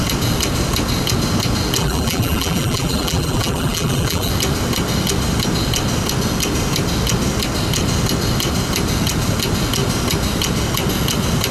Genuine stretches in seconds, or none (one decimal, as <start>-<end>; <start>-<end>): 0.0-1.8; 4.3-11.5